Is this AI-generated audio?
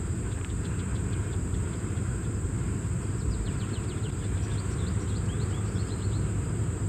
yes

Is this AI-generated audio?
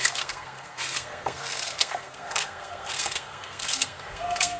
yes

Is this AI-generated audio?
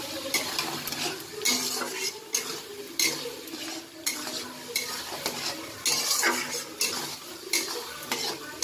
no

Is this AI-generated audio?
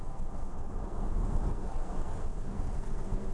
yes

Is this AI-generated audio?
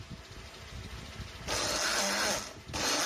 no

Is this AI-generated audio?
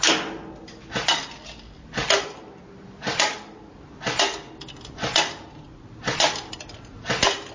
no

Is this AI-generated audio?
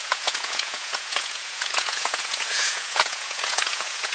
yes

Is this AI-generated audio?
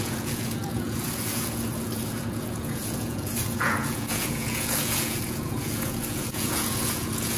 yes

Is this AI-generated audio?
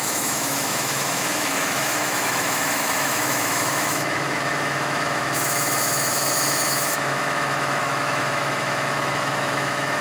yes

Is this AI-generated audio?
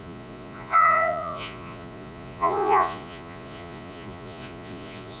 yes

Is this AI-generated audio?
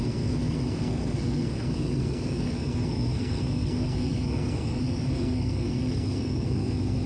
yes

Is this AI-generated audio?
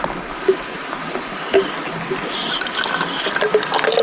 no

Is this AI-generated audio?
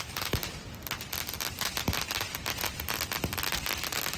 no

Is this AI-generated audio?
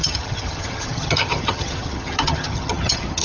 yes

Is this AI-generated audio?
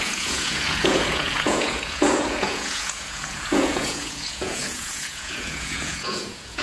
yes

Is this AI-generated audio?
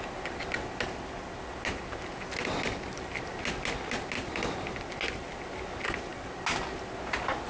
no